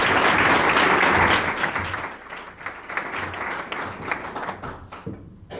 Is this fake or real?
real